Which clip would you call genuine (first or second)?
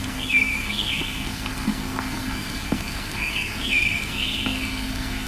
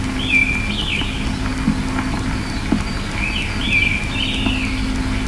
second